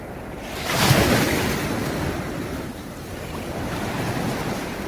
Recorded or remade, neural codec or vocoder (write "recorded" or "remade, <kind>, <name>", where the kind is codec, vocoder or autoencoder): recorded